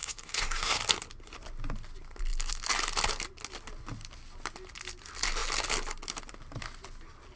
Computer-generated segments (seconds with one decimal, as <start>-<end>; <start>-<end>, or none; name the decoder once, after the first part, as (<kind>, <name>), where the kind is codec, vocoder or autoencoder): 0.0-0.8 (codec, SNAC)